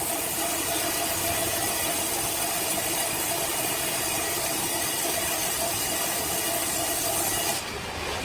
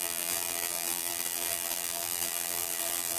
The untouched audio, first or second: first